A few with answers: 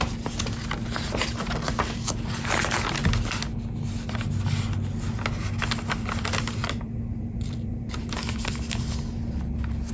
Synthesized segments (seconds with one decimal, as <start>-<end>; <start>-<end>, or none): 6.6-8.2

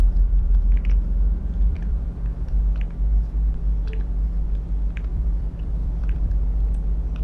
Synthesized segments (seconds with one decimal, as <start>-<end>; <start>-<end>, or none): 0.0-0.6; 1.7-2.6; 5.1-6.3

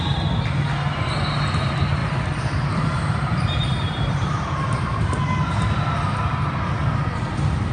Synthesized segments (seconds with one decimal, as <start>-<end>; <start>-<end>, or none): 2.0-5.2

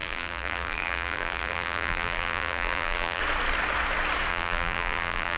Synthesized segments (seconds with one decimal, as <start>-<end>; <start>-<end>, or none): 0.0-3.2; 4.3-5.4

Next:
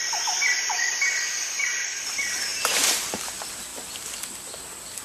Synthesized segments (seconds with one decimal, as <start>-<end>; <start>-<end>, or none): 2.5-3.3